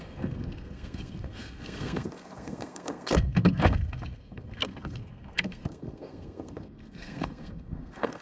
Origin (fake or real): fake